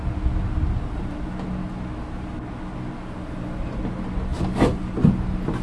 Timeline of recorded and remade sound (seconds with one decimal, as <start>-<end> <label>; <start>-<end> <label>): 0.0-4.3 recorded; 4.3-4.8 remade; 4.8-5.6 recorded